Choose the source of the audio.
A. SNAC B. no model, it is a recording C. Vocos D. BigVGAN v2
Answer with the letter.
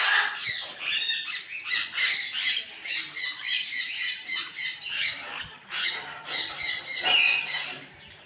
D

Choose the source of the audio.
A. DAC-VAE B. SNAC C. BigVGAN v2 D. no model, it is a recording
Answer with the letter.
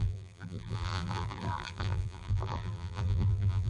C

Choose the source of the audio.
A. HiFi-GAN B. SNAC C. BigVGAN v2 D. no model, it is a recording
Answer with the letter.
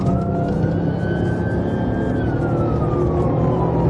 D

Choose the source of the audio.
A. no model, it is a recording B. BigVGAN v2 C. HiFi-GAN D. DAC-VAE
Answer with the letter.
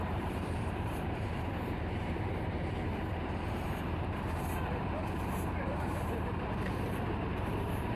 B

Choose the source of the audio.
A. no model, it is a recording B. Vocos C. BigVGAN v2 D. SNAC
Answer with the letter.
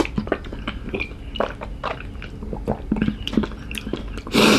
A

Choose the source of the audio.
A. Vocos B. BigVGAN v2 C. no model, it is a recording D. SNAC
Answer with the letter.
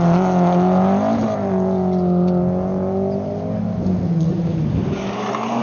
C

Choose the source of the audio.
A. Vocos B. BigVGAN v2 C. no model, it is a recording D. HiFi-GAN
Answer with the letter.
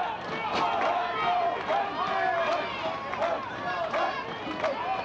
C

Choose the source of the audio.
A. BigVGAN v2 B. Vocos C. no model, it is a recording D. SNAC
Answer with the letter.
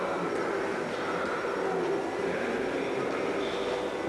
C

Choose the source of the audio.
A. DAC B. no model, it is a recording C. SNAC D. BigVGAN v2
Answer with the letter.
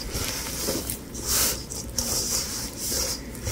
D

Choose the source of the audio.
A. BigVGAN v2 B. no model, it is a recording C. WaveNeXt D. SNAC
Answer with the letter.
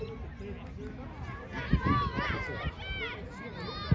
B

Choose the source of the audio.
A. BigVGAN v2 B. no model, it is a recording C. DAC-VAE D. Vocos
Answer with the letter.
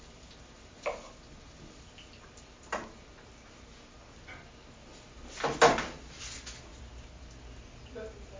B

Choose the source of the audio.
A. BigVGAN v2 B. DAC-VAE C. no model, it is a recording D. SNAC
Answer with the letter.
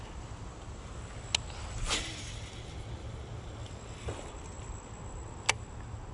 C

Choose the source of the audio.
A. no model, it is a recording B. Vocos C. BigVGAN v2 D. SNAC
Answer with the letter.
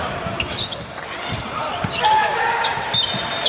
C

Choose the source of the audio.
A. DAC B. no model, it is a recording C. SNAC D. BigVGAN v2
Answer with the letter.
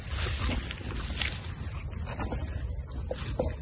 B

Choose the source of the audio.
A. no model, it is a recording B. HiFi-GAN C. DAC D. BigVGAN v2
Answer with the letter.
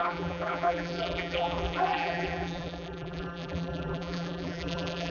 D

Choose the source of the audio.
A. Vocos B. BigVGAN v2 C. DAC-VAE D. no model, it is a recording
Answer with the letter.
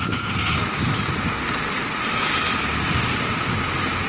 D